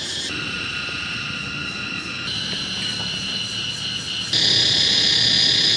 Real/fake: real